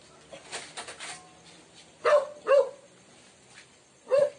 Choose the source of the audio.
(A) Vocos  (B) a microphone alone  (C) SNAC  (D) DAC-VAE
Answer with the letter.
B